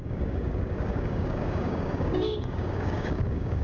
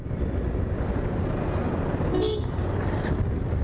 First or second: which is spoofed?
first